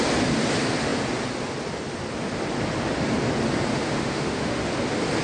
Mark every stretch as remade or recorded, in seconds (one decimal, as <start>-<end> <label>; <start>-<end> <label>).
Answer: 0.0-3.7 recorded; 3.7-4.6 remade; 4.6-5.2 recorded